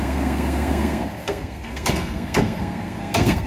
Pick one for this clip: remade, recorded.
remade